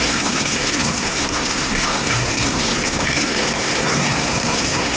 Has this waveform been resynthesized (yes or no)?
yes